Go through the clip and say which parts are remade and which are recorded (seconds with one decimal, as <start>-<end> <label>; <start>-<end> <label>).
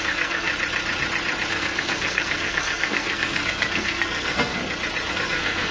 0.0-0.5 remade; 0.5-1.5 recorded; 1.5-4.6 remade; 4.6-5.1 recorded; 5.1-5.7 remade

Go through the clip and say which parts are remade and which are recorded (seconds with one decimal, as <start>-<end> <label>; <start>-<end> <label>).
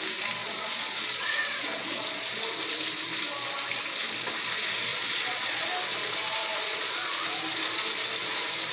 0.0-0.4 recorded; 0.4-2.3 remade; 2.3-4.9 recorded; 4.9-5.7 remade; 5.7-6.4 recorded; 6.4-7.1 remade; 7.1-8.7 recorded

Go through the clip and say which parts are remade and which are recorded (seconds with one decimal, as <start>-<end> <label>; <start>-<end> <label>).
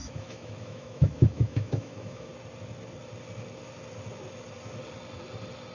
0.0-2.3 remade; 2.3-5.7 recorded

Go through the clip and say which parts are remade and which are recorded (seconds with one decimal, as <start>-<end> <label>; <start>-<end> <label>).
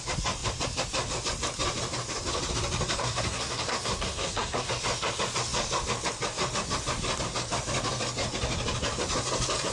0.0-3.0 recorded; 3.0-4.7 remade; 4.7-9.7 recorded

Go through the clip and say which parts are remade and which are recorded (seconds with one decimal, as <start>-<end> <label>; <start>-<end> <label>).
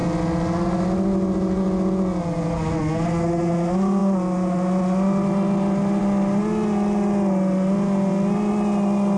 0.0-9.2 recorded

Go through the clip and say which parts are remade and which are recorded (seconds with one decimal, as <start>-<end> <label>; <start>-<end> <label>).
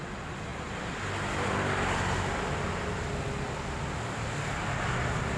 0.0-5.4 recorded